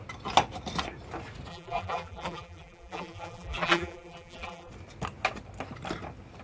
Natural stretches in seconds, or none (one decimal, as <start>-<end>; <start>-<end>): 0.0-1.5; 4.7-6.4